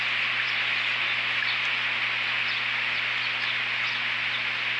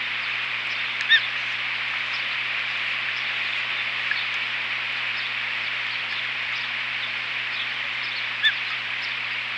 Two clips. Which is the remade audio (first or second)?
second